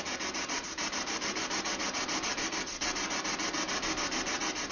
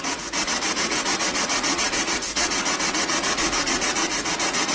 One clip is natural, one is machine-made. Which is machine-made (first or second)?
second